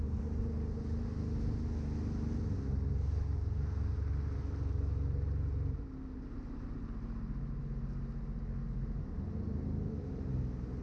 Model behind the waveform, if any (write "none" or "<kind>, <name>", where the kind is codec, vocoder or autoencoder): none